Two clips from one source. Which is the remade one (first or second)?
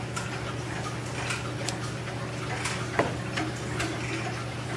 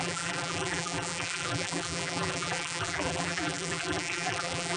second